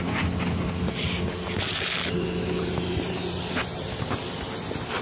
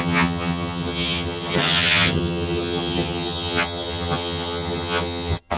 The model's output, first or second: second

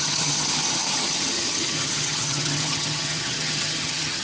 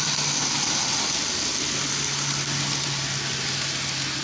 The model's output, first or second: first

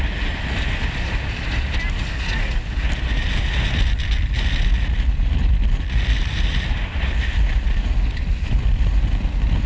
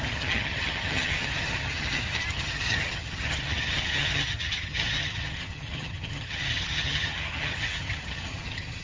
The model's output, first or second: second